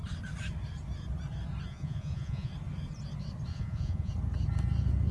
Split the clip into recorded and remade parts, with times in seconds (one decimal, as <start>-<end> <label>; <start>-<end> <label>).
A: 0.0-1.7 recorded; 1.7-2.5 remade; 2.5-3.5 recorded; 3.5-4.1 remade; 4.1-5.1 recorded